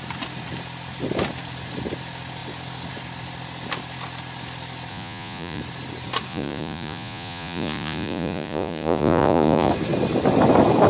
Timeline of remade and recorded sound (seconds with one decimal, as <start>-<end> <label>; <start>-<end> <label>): 0.0-4.9 recorded; 4.9-5.6 remade; 5.6-6.3 recorded; 6.3-9.7 remade; 9.7-10.9 recorded